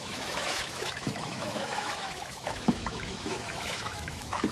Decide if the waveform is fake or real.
fake